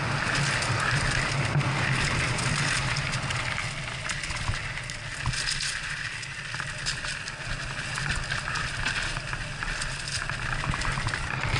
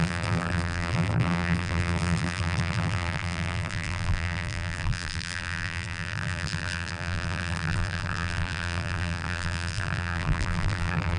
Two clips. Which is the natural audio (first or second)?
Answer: first